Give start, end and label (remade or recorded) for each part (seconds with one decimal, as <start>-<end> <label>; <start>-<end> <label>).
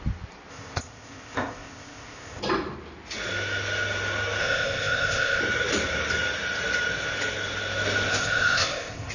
0.0-0.5 recorded; 0.5-2.4 remade; 2.4-4.4 recorded; 4.4-5.4 remade; 5.4-8.1 recorded; 8.1-9.1 remade